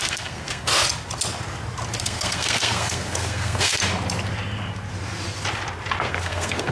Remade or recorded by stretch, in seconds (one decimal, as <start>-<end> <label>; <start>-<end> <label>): 0.0-0.7 remade; 0.7-2.0 recorded; 2.0-3.8 remade; 3.8-6.0 recorded; 6.0-6.7 remade